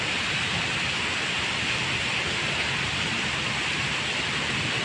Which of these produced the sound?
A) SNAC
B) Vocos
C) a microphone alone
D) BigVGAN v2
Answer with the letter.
C